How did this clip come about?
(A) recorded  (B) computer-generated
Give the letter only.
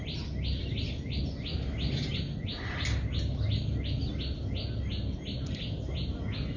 A